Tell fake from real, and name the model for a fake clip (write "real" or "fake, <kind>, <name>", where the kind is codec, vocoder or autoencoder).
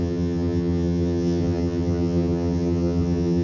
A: fake, vocoder, HiFi-GAN